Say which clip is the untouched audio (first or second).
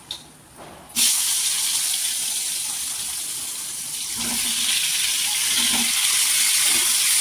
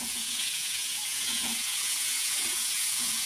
first